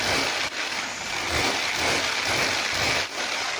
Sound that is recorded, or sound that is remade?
recorded